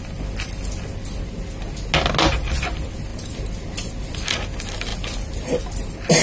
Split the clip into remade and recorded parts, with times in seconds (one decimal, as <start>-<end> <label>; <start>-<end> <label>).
0.0-6.2 recorded